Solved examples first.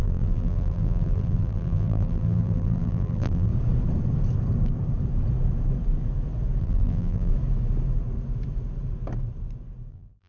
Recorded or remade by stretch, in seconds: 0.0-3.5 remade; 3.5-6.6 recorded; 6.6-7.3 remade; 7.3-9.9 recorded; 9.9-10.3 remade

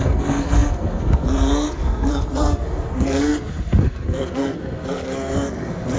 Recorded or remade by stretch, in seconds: 0.0-6.0 remade

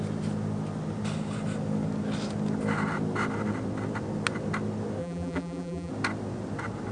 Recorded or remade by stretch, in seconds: 0.0-5.0 recorded; 5.0-5.9 remade; 5.9-6.9 recorded

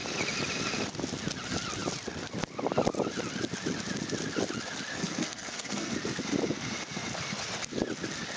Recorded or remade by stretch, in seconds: 0.0-4.9 recorded; 4.9-5.9 remade; 5.9-8.4 recorded

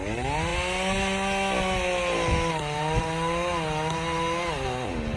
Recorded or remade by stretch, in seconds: 0.0-5.2 recorded

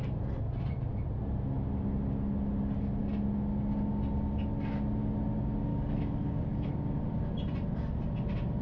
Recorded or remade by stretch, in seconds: 0.0-5.7 recorded; 5.7-6.7 remade; 6.7-8.6 recorded

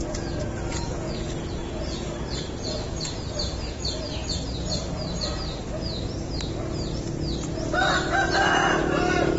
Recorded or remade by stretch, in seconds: 0.0-2.1 remade; 2.1-9.4 recorded

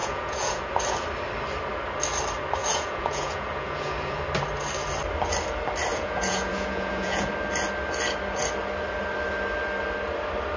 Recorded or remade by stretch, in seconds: 0.0-0.7 remade; 0.7-2.6 recorded; 2.6-4.2 remade; 4.2-5.9 recorded; 5.9-7.3 remade; 7.3-10.6 recorded